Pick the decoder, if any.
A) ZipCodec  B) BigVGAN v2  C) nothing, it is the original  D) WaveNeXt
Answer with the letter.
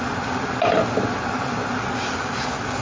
C